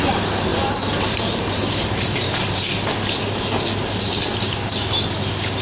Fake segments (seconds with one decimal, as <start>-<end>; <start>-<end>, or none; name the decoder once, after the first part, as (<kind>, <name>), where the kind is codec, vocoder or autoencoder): 0.5-2.6 (vocoder, BigVGAN v2)